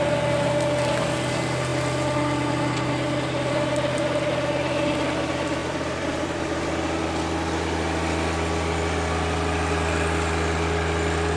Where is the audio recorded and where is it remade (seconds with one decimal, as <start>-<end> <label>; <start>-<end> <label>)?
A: 0.0-5.6 recorded; 5.6-7.0 remade; 7.0-11.4 recorded